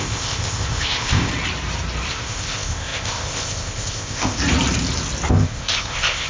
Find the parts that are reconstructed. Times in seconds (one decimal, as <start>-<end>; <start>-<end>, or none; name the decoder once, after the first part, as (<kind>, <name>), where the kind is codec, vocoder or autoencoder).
0.0-1.3 (codec, ZipCodec); 2.1-4.4; 5.3-6.3